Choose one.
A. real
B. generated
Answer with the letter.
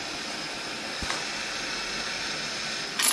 A